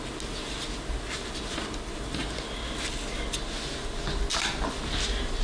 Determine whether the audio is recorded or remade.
recorded